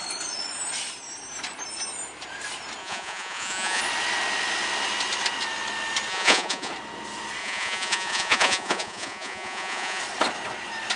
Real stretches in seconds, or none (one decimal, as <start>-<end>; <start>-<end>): 0.0-2.8; 3.8-6.1; 6.7-7.4; 10.0-11.0